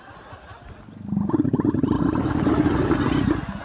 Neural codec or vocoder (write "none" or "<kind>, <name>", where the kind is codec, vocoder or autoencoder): none